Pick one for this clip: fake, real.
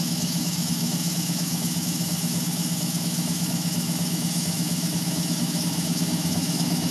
fake